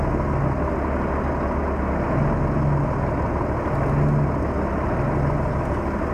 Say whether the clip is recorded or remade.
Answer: recorded